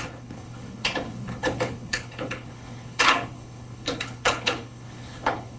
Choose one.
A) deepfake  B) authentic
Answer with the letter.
A